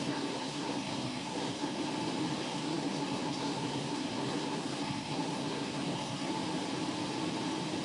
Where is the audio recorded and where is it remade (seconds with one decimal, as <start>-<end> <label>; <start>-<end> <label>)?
0.0-1.8 remade; 1.8-2.4 recorded; 2.4-6.3 remade; 6.3-7.8 recorded